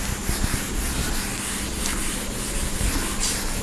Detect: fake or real real